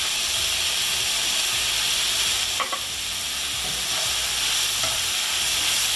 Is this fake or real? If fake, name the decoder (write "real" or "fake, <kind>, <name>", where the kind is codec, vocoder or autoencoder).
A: real